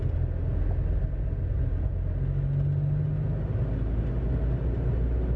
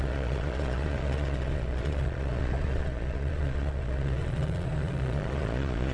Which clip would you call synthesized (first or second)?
second